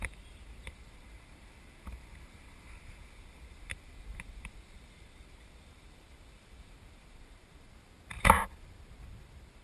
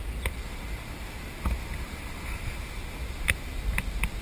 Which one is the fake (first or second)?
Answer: first